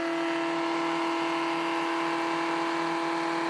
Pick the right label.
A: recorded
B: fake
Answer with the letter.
A